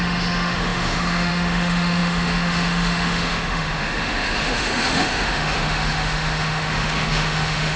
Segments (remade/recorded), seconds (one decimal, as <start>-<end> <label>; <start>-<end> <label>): 0.0-7.8 remade